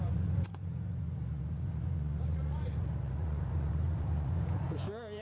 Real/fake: fake